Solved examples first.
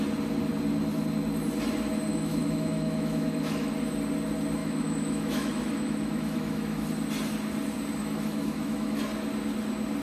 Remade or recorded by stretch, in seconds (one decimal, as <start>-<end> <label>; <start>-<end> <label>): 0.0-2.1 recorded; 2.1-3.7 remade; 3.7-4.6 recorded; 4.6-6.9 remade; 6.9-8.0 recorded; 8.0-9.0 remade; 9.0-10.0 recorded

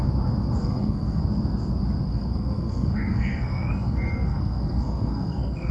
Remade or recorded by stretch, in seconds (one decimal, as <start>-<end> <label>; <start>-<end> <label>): 0.0-0.6 recorded; 0.6-1.2 remade; 1.2-2.1 recorded; 2.1-5.7 remade

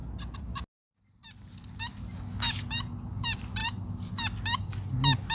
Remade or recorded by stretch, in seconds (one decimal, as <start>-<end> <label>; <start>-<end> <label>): 0.0-5.3 recorded